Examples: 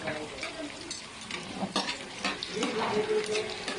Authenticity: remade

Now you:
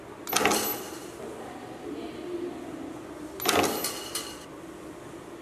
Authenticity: recorded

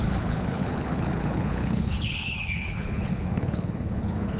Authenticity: remade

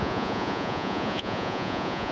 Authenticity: remade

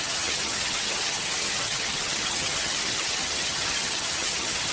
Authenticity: remade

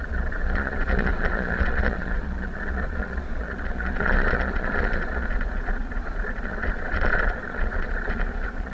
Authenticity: remade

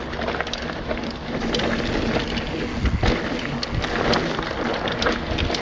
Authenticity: recorded